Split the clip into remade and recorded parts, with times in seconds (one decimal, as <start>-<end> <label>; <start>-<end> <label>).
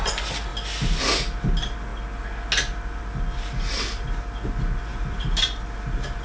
0.0-4.9 recorded; 4.9-6.2 remade